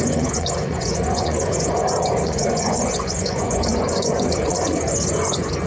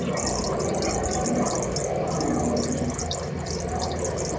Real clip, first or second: second